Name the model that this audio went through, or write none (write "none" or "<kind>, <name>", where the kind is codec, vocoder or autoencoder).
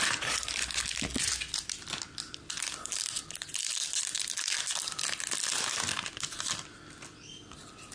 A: none